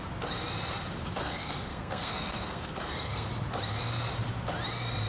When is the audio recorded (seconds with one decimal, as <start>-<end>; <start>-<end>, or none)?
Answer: 0.0-1.2; 3.3-5.1